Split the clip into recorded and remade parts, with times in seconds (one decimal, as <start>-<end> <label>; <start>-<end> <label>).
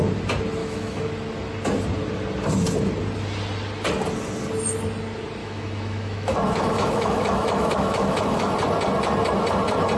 0.0-0.6 recorded; 0.6-1.1 remade; 1.1-5.4 recorded; 5.4-8.5 remade; 8.5-10.0 recorded